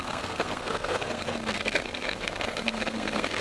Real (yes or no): no